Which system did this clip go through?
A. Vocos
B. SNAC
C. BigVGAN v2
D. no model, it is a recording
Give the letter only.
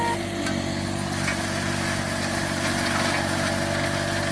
D